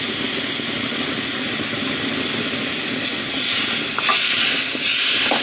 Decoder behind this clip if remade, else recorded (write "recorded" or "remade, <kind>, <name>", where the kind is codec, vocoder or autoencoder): recorded